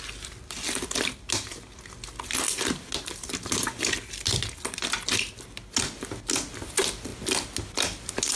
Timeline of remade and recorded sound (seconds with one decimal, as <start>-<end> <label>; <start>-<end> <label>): 0.0-8.4 recorded